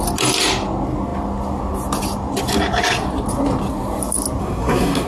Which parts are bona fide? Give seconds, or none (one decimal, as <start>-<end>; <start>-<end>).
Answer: 0.0-4.4